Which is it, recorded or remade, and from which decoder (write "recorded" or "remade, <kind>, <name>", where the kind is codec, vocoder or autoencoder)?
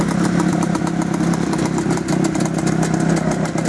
recorded